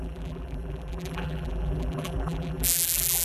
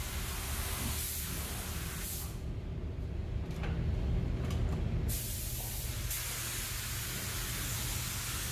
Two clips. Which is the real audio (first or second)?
second